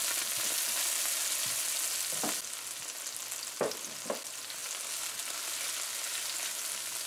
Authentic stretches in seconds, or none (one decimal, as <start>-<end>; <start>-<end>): 0.0-7.1